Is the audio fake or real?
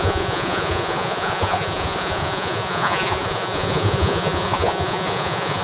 fake